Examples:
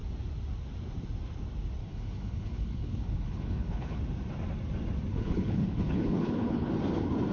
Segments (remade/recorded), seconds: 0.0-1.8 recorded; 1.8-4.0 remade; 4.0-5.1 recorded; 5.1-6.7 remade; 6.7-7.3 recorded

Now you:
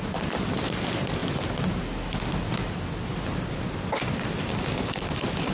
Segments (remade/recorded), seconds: 0.0-5.5 recorded

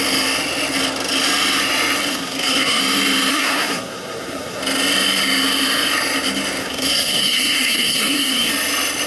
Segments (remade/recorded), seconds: 0.0-2.1 recorded; 2.1-2.8 remade; 2.8-3.3 recorded; 3.3-4.6 remade; 4.6-6.6 recorded; 6.6-8.5 remade; 8.5-9.1 recorded

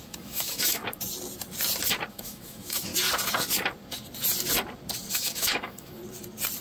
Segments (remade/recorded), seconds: 0.0-0.8 remade; 0.8-2.1 recorded; 2.1-2.9 remade; 2.9-5.1 recorded; 5.1-6.0 remade; 6.0-6.6 recorded

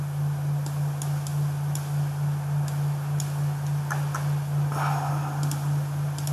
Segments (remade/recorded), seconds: 0.0-6.3 recorded

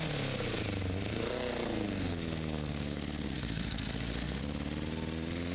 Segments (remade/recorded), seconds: 0.0-1.1 recorded; 1.1-4.4 remade; 4.4-5.5 recorded

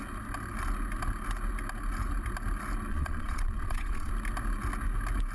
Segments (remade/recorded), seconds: 0.0-2.9 recorded; 2.9-4.1 remade; 4.1-5.3 recorded

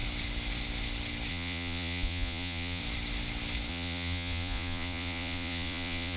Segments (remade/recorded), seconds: 0.0-1.3 recorded; 1.3-2.8 remade; 2.8-3.7 recorded; 3.7-6.2 remade